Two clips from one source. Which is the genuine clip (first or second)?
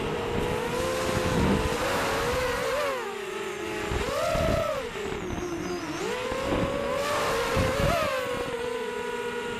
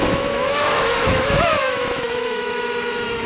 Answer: first